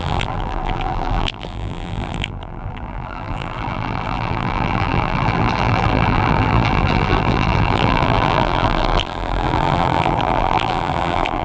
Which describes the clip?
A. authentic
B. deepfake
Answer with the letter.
B